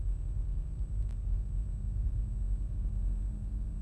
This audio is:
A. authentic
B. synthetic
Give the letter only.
A